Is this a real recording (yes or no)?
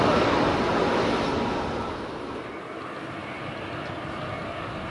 yes